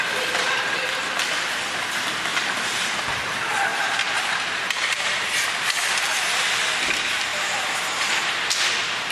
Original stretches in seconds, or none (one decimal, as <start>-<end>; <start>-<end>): 0.0-2.3; 3.1-3.7; 6.1-7.3; 8.3-9.1